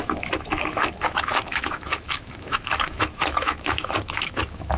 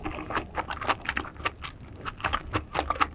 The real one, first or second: second